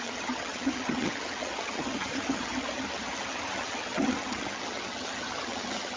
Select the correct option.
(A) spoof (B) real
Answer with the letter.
A